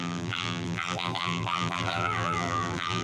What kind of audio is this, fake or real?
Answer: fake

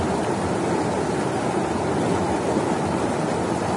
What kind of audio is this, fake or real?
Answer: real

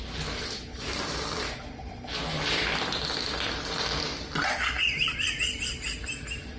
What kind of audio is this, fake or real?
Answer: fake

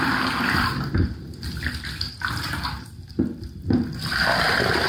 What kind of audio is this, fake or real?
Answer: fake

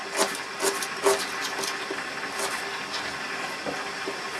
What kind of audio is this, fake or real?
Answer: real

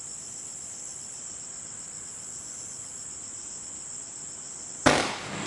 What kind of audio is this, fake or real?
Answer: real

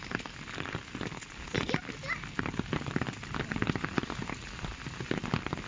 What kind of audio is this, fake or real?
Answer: real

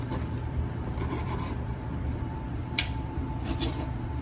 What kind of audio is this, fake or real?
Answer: fake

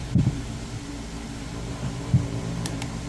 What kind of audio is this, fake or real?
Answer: fake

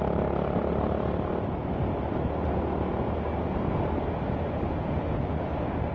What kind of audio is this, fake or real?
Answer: real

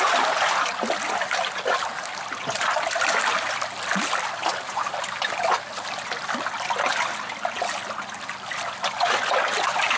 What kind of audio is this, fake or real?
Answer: real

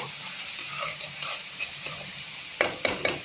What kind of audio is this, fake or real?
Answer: fake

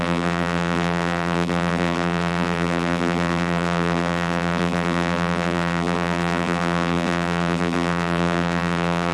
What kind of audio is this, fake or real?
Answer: fake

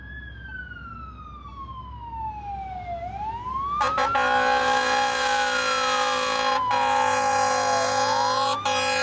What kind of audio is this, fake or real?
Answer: real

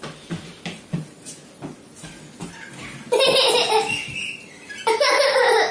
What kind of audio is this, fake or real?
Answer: real